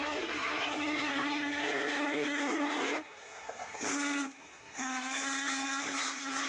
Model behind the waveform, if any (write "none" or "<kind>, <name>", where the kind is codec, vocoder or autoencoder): codec, SNAC